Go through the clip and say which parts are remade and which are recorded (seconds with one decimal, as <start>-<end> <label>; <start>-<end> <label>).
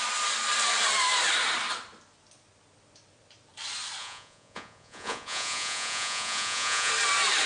0.0-4.0 recorded; 4.0-6.9 remade; 6.9-7.5 recorded